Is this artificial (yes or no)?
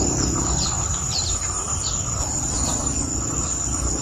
yes